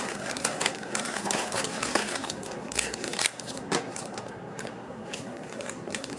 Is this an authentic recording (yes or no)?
no